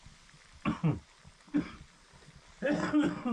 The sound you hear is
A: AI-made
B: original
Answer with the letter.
B